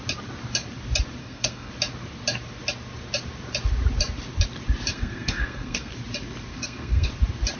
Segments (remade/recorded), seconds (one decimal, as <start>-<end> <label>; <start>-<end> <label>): 0.0-1.2 recorded; 1.2-1.7 remade; 1.7-4.9 recorded; 4.9-5.9 remade; 5.9-6.5 recorded; 6.5-7.1 remade; 7.1-7.6 recorded